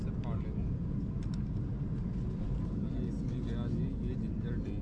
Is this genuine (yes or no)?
yes